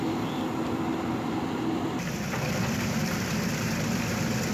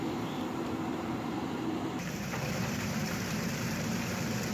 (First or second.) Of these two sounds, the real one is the first